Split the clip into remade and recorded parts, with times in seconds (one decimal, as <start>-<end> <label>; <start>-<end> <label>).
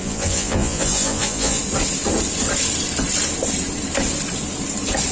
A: 0.0-1.6 remade; 1.6-5.1 recorded